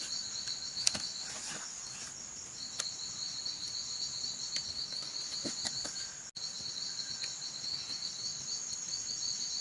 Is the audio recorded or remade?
recorded